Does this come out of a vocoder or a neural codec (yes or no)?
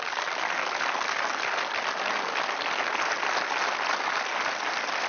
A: no